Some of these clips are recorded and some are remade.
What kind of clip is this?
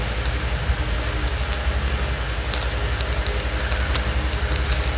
recorded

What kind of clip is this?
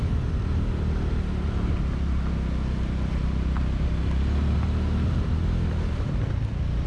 recorded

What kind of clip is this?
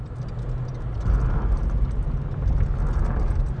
recorded